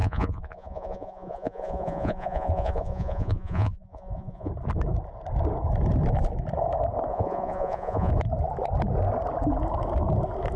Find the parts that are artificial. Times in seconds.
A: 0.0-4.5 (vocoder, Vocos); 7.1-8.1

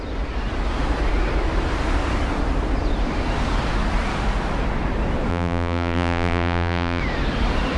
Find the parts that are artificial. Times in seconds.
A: 5.3-7.0 (vocoder, BigVGAN v2)

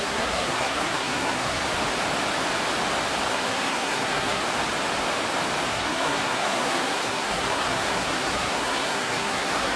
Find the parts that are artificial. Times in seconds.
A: 0.0-1.6 (codec, SNAC); 3.3-4.4; 5.7-9.8

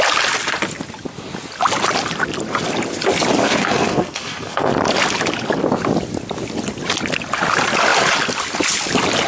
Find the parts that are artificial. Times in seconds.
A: 3.4-4.7 (codec, SNAC)

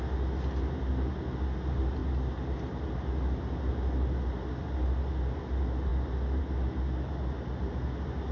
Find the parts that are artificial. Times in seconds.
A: none

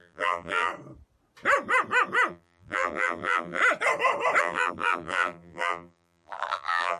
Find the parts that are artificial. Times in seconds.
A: 0.0-0.7 (vocoder, BigVGAN v2); 2.3-3.6; 4.4-7.0

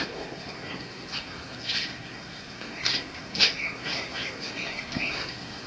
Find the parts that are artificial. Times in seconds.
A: 0.0-5.7 (codec, SNAC)